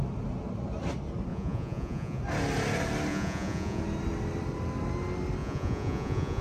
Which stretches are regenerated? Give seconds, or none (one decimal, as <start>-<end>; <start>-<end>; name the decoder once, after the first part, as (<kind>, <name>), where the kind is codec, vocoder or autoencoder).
1.3-2.2 (vocoder, Vocos); 3.1-3.8; 5.4-6.4